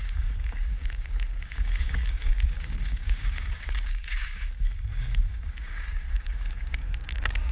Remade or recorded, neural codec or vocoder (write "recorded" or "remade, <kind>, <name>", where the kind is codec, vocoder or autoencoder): remade, codec, DAC